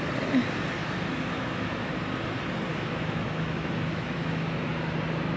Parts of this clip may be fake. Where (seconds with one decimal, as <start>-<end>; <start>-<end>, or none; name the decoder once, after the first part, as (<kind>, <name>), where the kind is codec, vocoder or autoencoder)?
0.8-1.9 (autoencoder, DAC-VAE); 2.7-4.7